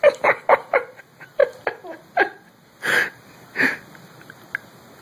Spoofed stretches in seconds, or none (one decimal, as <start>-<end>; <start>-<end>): none